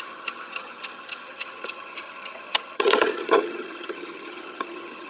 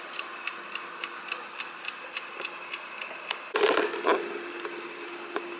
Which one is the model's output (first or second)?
first